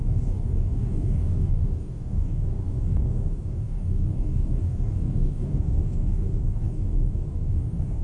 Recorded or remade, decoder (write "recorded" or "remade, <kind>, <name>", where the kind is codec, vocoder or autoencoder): remade, codec, DAC